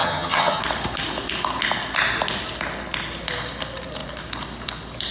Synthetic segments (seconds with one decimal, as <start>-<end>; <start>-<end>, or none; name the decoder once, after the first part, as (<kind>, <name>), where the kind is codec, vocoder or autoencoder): 0.0-0.6 (vocoder, HiFi-GAN)